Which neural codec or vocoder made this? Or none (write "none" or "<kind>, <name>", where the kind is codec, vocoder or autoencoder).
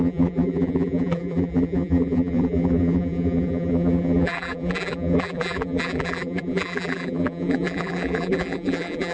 vocoder, BigVGAN v2